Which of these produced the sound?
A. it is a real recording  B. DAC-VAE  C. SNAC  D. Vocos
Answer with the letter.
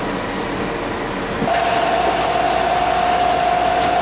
A